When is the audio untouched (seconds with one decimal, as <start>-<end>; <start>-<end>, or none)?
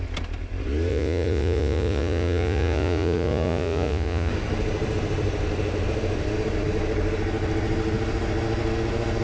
0.0-0.9; 4.3-9.2